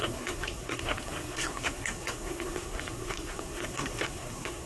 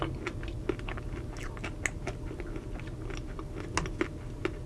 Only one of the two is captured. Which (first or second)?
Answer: second